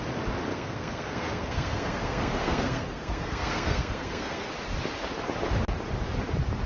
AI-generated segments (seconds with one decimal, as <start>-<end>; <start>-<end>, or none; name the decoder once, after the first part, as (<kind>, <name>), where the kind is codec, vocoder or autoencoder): 0.5-4.5 (codec, SNAC)